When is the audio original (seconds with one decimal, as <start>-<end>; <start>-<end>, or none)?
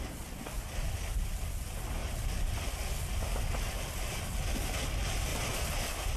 0.0-6.2